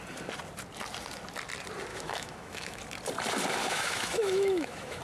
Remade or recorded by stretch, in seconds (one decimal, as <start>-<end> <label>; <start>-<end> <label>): 0.0-1.9 recorded; 1.9-2.8 remade; 2.8-3.6 recorded; 3.6-5.0 remade